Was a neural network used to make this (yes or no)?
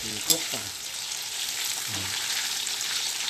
yes